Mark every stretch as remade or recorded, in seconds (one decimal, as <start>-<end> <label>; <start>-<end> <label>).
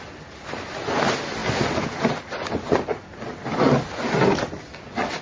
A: 0.0-5.2 recorded